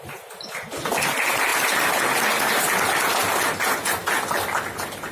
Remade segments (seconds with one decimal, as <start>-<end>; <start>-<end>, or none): none